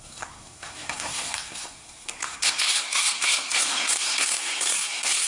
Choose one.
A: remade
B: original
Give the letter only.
A